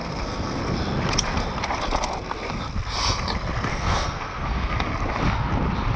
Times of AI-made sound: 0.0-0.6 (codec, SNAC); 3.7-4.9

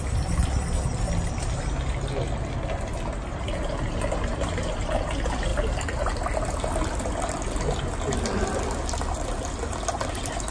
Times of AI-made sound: none